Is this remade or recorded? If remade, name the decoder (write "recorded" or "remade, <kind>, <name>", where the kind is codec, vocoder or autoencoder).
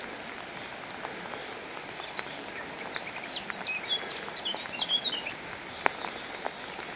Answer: recorded